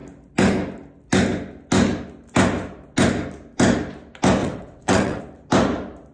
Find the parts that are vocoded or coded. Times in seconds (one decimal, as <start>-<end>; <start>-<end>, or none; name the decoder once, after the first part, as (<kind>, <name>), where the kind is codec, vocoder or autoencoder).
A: 4.4-5.2 (vocoder, WaveNeXt)